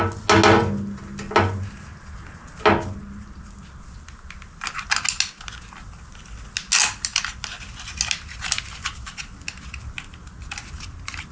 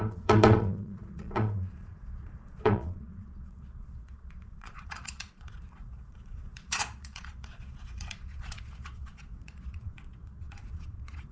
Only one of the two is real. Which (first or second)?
first